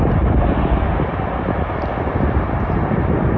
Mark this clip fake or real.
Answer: real